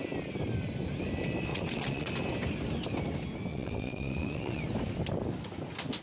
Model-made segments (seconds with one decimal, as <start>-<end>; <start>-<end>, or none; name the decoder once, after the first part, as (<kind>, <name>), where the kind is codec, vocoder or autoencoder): 1.5-2.1 (vocoder, WaveNeXt); 3.5-4.6